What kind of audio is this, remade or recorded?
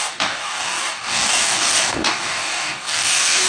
remade